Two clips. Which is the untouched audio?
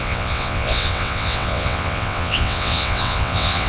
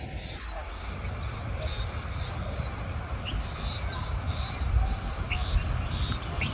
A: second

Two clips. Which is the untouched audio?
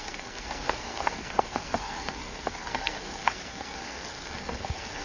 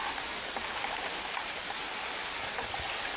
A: second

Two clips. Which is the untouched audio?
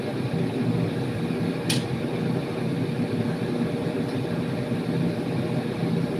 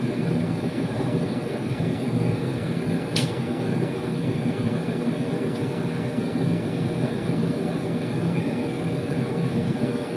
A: first